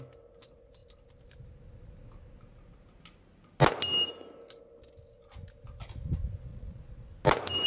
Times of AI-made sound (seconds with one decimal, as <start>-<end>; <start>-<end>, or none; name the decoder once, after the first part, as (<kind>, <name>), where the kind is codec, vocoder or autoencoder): 6.5-7.1 (vocoder, Vocos)